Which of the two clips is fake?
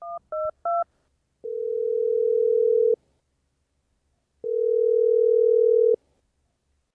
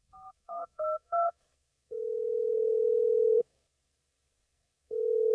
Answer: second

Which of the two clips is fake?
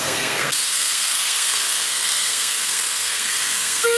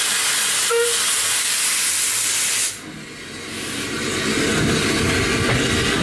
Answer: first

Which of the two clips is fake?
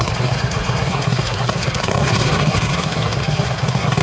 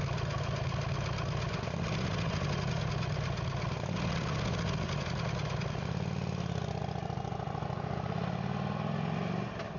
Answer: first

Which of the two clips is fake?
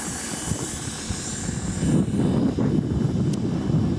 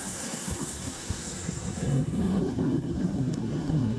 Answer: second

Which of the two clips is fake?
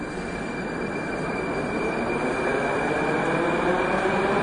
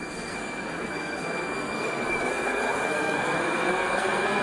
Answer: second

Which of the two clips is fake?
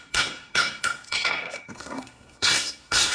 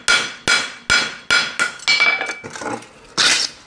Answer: first